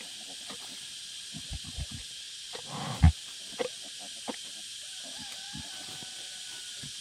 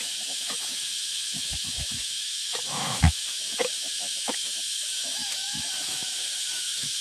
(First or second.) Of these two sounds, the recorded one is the first